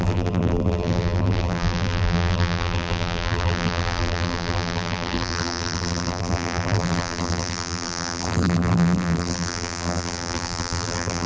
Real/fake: fake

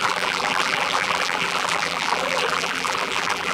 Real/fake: fake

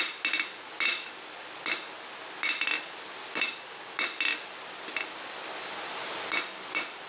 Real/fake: real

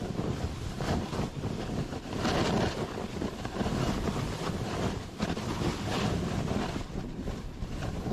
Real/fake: fake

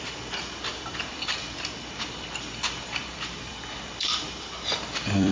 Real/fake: fake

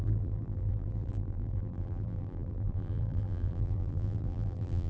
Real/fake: fake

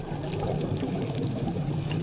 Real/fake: real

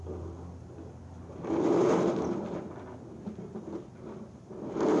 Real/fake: real